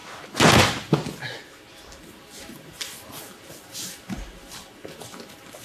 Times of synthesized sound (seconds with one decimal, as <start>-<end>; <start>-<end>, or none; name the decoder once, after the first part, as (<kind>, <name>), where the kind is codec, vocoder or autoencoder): none

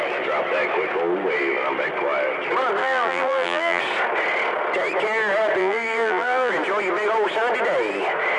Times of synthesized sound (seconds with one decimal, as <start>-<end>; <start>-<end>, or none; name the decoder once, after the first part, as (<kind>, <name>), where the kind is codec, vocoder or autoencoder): 2.8-3.8 (vocoder, BigVGAN v2); 5.6-6.5